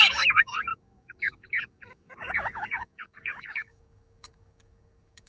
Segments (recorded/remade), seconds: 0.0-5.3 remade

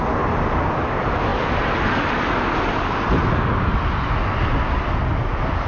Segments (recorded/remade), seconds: 0.0-5.7 recorded

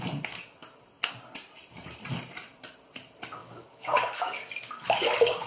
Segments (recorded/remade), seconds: 0.0-3.4 recorded; 3.4-5.5 remade